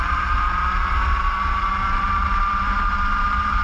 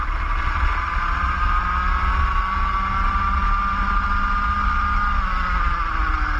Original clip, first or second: second